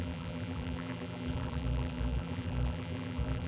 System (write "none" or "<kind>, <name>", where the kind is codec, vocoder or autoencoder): vocoder, BigVGAN v2